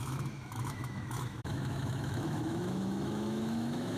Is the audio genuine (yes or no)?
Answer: no